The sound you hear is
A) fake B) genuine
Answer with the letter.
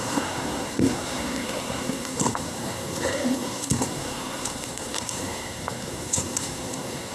A